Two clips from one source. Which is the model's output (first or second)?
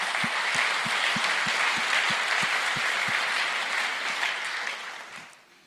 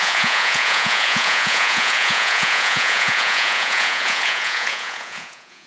second